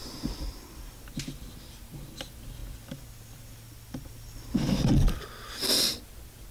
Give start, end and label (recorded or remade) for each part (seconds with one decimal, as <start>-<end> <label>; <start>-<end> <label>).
0.0-6.5 recorded